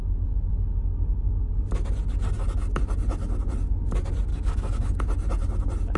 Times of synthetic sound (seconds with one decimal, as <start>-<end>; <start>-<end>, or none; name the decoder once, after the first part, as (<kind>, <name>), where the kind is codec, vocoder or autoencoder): 4.3-5.0 (codec, DAC)